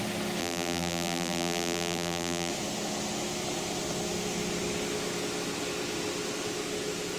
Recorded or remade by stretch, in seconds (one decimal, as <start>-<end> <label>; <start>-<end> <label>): 0.0-0.4 recorded; 0.4-2.5 remade; 2.5-7.2 recorded